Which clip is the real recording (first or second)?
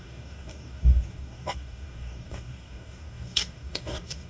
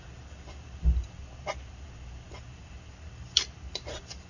second